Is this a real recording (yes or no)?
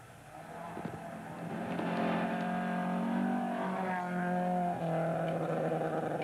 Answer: yes